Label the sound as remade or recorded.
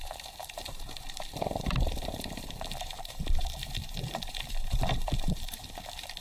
remade